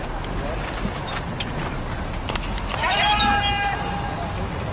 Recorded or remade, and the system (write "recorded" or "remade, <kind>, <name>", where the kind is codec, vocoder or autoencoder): recorded